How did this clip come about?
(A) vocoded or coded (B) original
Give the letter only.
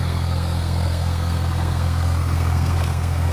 A